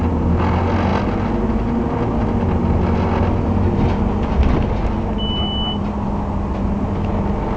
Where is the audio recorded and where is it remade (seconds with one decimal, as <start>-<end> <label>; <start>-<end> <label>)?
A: 0.0-7.6 recorded